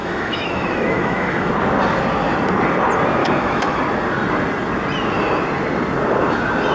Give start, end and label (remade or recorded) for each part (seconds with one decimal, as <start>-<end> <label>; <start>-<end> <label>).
0.0-1.5 remade; 1.5-3.2 recorded; 3.2-3.8 remade; 3.8-6.7 recorded